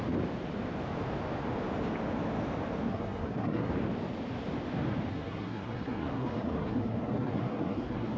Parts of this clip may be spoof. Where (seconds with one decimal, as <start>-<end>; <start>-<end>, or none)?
2.9-3.7; 5.1-8.2